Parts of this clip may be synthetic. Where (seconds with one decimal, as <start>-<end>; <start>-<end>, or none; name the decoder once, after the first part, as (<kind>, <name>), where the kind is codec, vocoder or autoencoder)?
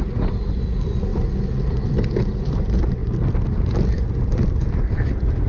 3.0-4.5 (vocoder, BigVGAN v2)